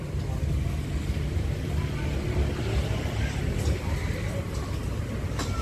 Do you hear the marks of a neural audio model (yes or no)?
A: no